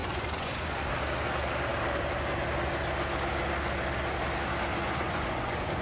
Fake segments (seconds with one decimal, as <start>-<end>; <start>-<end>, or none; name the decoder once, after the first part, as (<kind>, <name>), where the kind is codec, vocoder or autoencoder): 0.0-0.9 (vocoder, Vocos); 4.7-5.8